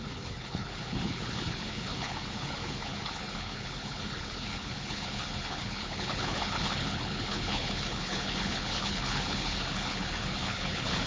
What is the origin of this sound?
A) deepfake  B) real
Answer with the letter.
A